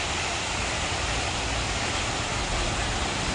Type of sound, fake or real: real